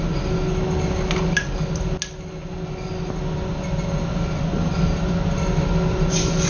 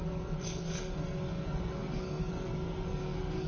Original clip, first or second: first